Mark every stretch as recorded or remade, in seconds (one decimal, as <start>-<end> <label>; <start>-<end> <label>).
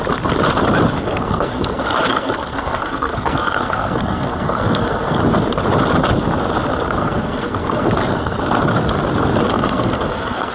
0.0-1.0 recorded; 1.0-5.2 remade; 5.2-7.0 recorded; 7.0-8.4 remade; 8.4-9.5 recorded; 9.5-10.5 remade